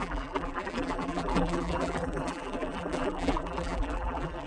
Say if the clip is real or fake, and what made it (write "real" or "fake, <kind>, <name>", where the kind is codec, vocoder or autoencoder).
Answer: fake, vocoder, BigVGAN v2